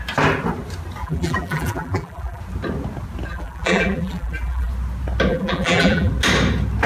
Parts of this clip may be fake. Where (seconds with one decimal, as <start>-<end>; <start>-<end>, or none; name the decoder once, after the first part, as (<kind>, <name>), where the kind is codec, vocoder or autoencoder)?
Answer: 1.0-2.4 (vocoder, BigVGAN v2); 3.3-4.7; 5.3-6.1